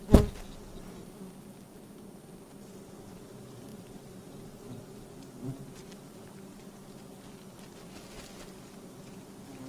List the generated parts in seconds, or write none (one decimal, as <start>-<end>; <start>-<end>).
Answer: 3.7-4.8; 5.8-7.3